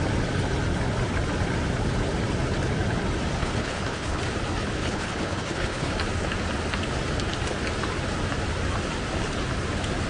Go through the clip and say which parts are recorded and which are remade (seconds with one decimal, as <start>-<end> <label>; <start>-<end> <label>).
0.0-3.4 recorded; 3.4-4.2 remade; 4.2-4.8 recorded; 4.8-5.9 remade; 5.9-10.1 recorded